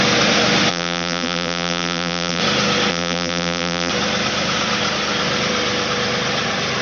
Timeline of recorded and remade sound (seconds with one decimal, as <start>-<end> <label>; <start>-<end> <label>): 0.0-0.7 recorded; 0.7-2.4 remade; 2.4-2.9 recorded; 2.9-3.9 remade; 3.9-6.8 recorded